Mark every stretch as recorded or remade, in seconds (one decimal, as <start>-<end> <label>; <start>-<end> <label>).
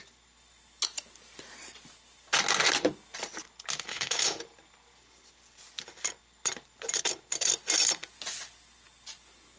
0.0-3.9 recorded; 3.9-4.4 remade; 4.4-9.6 recorded